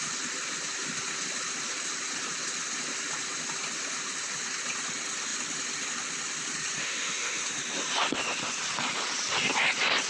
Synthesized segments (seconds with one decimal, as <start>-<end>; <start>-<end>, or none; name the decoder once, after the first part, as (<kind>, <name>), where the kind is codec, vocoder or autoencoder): 6.8-7.4 (autoencoder, DAC-VAE)